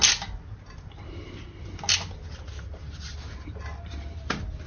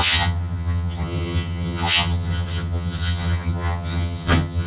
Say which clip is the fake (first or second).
second